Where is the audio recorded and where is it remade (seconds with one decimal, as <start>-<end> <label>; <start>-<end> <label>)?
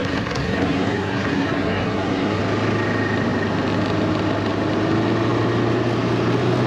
0.0-2.4 remade; 2.4-6.7 recorded